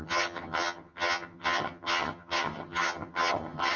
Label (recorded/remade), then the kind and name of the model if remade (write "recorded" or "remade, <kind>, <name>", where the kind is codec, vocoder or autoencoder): remade, vocoder, HiFi-GAN